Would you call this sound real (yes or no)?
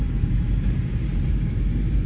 no